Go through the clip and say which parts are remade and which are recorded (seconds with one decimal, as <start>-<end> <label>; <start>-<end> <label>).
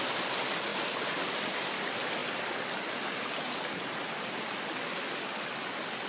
0.0-6.1 recorded